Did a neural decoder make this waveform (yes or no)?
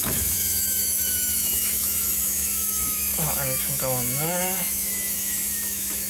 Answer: yes